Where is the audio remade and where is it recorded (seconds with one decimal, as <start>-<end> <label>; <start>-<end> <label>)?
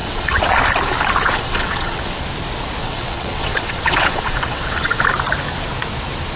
0.0-0.6 remade; 0.6-1.2 recorded; 1.2-2.2 remade; 2.2-2.8 recorded; 2.8-5.0 remade; 5.0-6.4 recorded